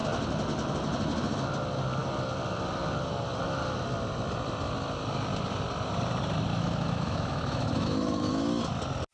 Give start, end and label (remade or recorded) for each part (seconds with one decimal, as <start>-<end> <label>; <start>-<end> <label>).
0.0-6.5 recorded; 6.5-8.3 remade; 8.3-9.1 recorded